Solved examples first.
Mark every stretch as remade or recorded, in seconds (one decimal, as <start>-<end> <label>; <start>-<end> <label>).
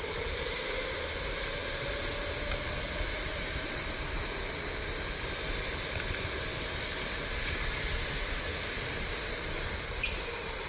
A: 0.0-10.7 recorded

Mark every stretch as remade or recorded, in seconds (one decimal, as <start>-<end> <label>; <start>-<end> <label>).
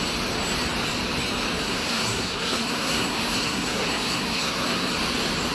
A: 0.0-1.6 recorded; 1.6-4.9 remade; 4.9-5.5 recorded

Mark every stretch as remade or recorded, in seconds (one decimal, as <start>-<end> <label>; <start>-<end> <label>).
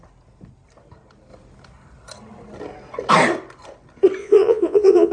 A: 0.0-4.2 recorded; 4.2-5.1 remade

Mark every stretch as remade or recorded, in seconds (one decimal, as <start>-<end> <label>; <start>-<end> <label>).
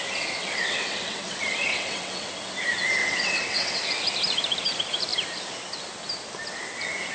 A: 0.0-0.4 recorded; 0.4-2.3 remade; 2.3-3.0 recorded; 3.0-3.8 remade; 3.8-7.1 recorded